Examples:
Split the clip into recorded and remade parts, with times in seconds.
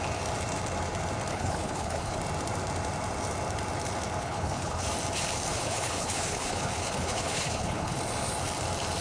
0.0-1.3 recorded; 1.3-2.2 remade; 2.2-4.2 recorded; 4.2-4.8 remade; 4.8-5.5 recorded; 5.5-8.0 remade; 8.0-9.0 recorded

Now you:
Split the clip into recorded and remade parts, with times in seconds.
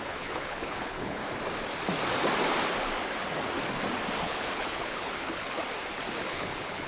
0.0-1.2 remade; 1.2-4.2 recorded; 4.2-5.6 remade; 5.6-6.2 recorded; 6.2-6.9 remade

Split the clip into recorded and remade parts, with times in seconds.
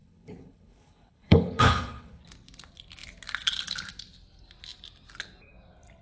0.0-2.2 remade; 2.2-6.0 recorded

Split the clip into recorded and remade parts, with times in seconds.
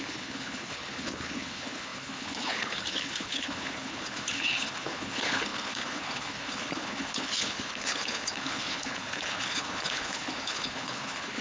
0.0-11.4 remade